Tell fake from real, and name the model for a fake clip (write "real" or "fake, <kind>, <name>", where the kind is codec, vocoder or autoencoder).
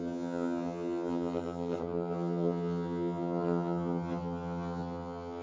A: fake, vocoder, HiFi-GAN